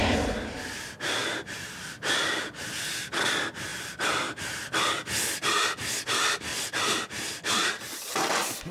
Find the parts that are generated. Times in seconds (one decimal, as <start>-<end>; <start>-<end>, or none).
none